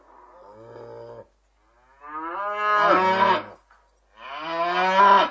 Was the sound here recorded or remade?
recorded